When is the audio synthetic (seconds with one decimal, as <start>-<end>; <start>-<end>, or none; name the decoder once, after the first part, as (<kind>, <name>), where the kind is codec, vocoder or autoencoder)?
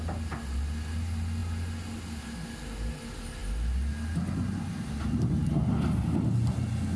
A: none